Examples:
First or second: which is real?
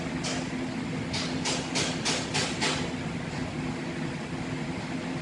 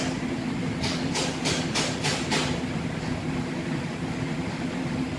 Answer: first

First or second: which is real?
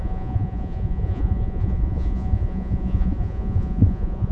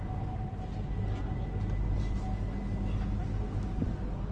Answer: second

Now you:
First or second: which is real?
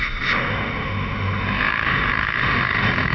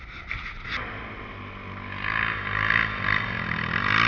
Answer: second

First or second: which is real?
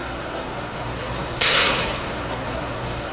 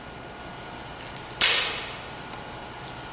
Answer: second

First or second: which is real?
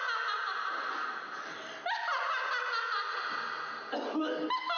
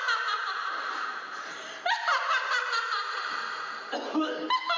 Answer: first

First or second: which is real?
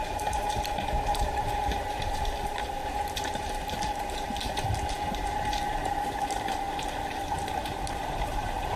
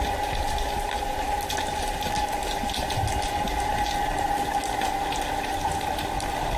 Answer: second